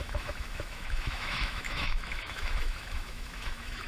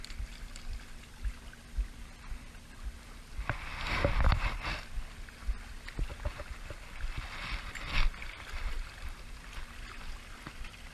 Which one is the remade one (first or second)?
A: first